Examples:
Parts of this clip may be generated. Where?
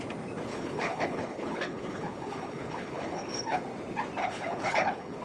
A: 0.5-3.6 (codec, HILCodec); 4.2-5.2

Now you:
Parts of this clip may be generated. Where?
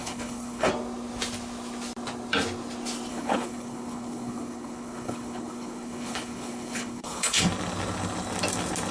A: 0.0-0.7 (codec, HILCodec); 3.1-7.4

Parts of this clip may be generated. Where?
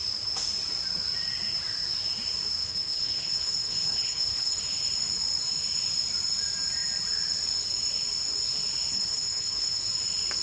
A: 2.6-4.6 (codec, HILCodec); 8.9-9.8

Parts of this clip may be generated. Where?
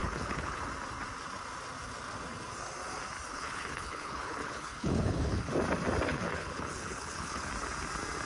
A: 0.0-0.6 (codec, HILCodec); 3.3-5.5; 6.1-7.5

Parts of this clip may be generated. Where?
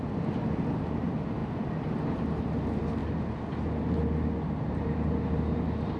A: none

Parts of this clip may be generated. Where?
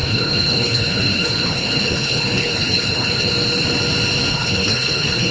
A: 0.0-3.3 (codec, HILCodec); 4.3-5.3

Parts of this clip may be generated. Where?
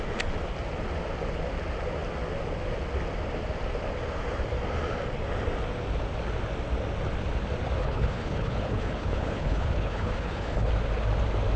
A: 7.8-10.7 (codec, HILCodec)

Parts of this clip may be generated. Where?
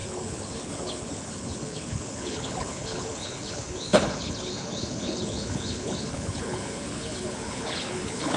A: 0.0-8.4 (codec, HILCodec)